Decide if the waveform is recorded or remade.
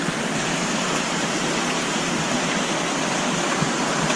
recorded